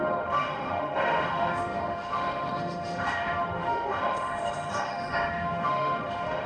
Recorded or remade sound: remade